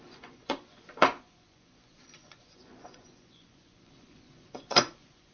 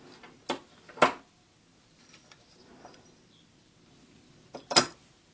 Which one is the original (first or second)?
second